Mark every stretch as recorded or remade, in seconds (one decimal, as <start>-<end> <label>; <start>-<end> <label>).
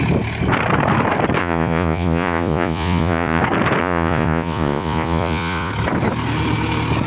0.0-1.4 recorded; 1.4-3.4 remade; 3.4-3.8 recorded; 3.8-5.7 remade; 5.7-7.1 recorded